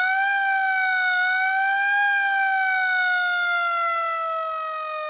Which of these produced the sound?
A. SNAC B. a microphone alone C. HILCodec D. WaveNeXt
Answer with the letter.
B